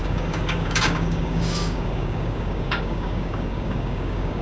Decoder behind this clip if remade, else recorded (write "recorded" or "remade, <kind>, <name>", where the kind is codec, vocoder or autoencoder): remade, codec, DAC